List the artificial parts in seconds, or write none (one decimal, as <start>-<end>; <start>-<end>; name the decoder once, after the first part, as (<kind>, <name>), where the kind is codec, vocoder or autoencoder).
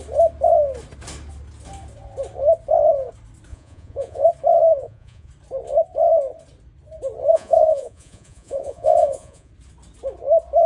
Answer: 3.5-4.3 (vocoder, Vocos); 4.7-5.3; 7.3-9.5